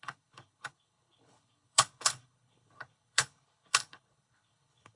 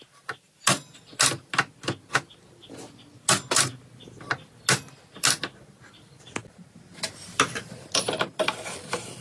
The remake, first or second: first